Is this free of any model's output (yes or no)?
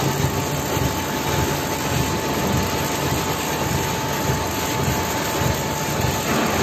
yes